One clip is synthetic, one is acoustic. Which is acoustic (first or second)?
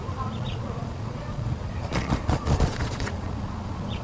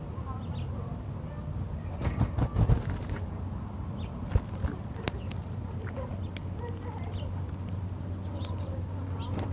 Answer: second